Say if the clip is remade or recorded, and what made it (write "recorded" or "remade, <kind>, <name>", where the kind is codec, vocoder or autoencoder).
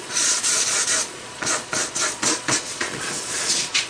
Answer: remade, vocoder, Vocos